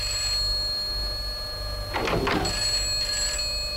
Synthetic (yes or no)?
no